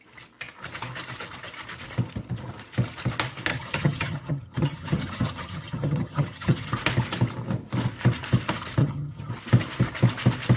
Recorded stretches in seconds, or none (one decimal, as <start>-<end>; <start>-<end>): 0.0-3.5; 6.7-8.8; 9.3-10.6